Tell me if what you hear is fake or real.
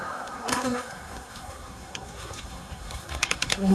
fake